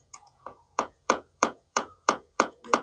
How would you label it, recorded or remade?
remade